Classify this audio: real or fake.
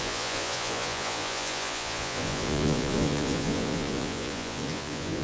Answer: fake